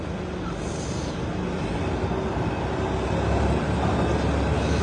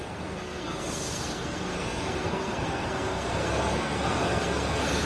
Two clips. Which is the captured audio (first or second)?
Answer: first